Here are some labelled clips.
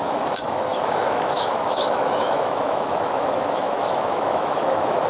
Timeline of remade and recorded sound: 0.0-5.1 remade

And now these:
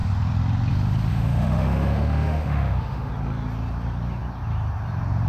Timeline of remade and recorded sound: 0.0-1.1 recorded; 1.1-3.1 remade; 3.1-5.3 recorded

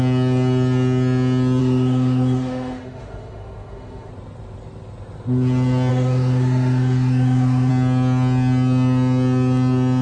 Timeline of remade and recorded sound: 0.0-1.6 recorded; 1.6-4.1 remade; 4.1-5.9 recorded; 5.9-7.7 remade; 7.7-10.0 recorded

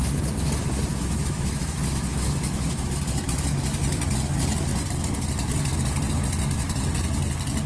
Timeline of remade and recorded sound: 0.0-0.9 recorded; 0.9-3.0 remade; 3.0-7.7 recorded

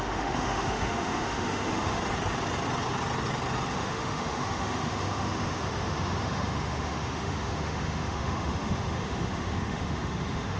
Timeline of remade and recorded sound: 0.0-2.0 remade; 2.0-3.7 recorded; 3.7-10.6 remade